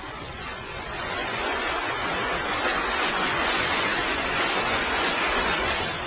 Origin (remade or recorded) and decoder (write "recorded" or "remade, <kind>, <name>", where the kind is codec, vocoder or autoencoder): remade, vocoder, Vocos